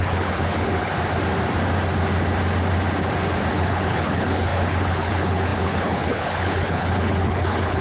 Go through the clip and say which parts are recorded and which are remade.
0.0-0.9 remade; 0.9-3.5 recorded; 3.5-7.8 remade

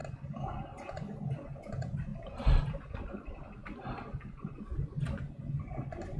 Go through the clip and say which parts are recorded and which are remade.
0.0-6.2 recorded

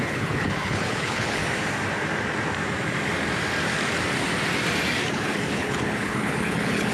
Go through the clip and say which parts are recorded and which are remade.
0.0-1.4 remade; 1.4-5.1 recorded; 5.1-6.9 remade

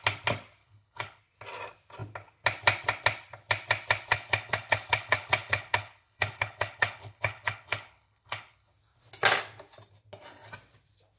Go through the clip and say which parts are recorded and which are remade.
0.0-0.6 recorded; 0.6-1.2 remade; 1.2-4.1 recorded; 4.1-8.7 remade; 8.7-11.2 recorded

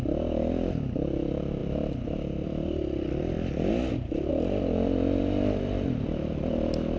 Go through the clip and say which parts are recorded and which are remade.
0.0-7.0 recorded

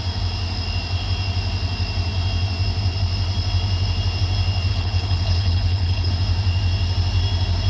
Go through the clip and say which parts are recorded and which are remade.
0.0-4.7 recorded; 4.7-6.1 remade; 6.1-7.7 recorded